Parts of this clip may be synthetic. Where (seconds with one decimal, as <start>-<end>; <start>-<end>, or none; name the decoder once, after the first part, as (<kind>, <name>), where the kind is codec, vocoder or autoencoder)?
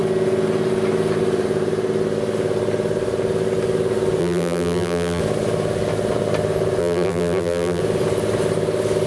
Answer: 4.2-5.2 (vocoder, BigVGAN v2); 6.8-7.8